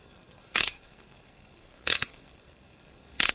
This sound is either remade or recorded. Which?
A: remade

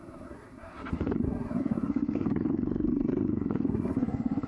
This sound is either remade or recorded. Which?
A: remade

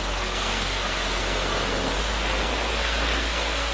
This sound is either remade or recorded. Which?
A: remade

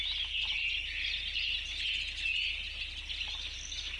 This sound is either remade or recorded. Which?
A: recorded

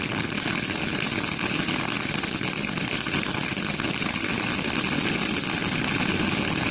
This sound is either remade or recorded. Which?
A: recorded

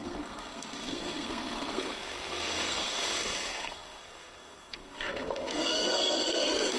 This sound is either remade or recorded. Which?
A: remade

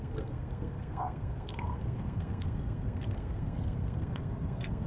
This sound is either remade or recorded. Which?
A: remade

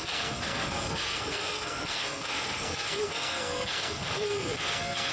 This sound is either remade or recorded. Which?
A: remade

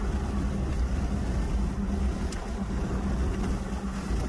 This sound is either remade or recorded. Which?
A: recorded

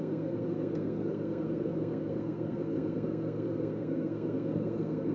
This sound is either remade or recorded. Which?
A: remade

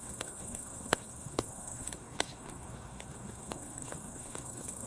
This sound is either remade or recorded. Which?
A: remade